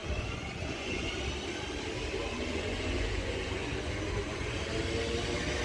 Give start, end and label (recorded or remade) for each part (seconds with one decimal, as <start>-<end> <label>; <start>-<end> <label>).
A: 0.0-1.1 remade; 1.1-2.3 recorded; 2.3-4.7 remade; 4.7-5.6 recorded

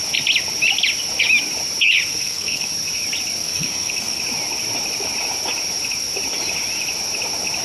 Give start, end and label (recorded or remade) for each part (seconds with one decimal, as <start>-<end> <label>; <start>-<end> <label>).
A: 0.0-2.1 recorded; 2.1-2.7 remade; 2.7-3.4 recorded; 3.4-4.2 remade; 4.2-7.6 recorded

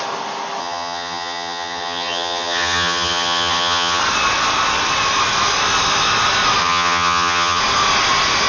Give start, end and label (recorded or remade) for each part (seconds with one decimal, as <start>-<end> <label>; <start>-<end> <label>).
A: 0.0-0.6 recorded; 0.6-4.0 remade; 4.0-6.6 recorded; 6.6-7.6 remade; 7.6-8.5 recorded

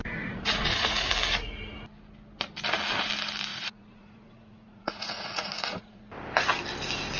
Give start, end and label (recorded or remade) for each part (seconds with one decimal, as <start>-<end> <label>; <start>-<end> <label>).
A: 0.0-1.1 remade; 1.1-3.5 recorded; 3.5-6.0 remade; 6.0-7.2 recorded

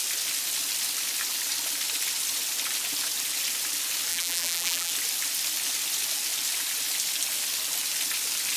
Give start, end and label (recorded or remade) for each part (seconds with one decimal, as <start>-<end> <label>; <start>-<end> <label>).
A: 0.0-4.1 recorded; 4.1-4.9 remade; 4.9-8.6 recorded

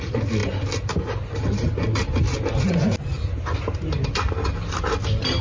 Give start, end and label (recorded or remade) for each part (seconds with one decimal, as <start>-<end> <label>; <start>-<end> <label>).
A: 0.0-5.4 recorded